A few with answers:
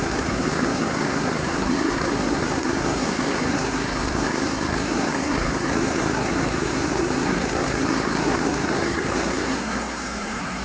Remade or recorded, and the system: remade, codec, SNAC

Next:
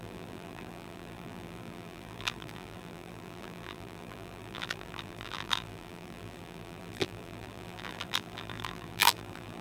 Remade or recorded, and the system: remade, vocoder, BigVGAN v2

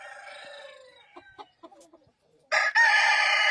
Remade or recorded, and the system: recorded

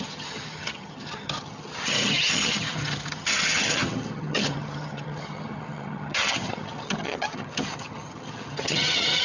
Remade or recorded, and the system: remade, vocoder, HiFi-GAN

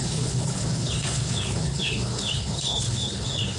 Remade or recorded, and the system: remade, codec, HILCodec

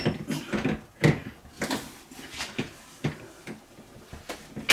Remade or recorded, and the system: recorded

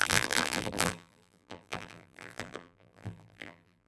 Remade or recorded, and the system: remade, vocoder, BigVGAN v2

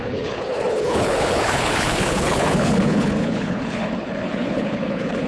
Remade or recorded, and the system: remade, codec, HILCodec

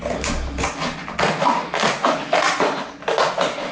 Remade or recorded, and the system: recorded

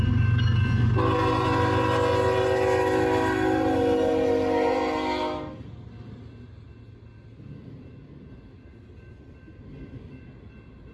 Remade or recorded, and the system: recorded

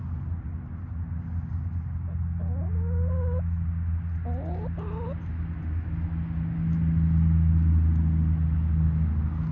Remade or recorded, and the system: recorded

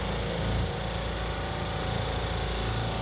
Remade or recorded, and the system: recorded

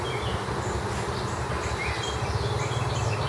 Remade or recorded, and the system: recorded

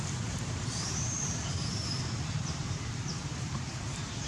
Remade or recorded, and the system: remade, vocoder, BigVGAN v2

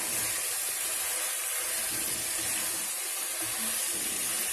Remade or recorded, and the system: recorded